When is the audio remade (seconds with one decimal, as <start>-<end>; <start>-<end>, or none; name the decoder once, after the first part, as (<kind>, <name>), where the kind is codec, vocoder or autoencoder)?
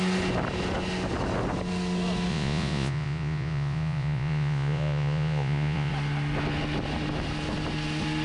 2.3-5.9 (vocoder, Vocos)